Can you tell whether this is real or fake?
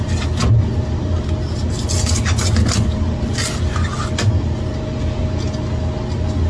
real